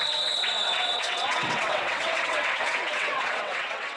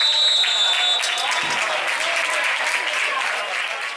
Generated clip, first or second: first